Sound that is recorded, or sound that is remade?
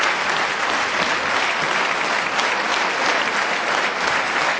recorded